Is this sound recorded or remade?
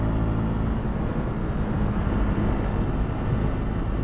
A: recorded